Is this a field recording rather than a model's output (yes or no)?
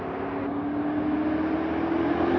yes